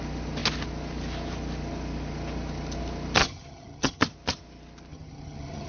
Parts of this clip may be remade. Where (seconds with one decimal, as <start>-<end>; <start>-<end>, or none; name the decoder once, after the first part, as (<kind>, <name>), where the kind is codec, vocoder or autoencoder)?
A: 3.2-4.0 (vocoder, HiFi-GAN); 4.9-5.7